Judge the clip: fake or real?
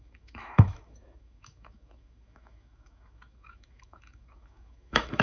fake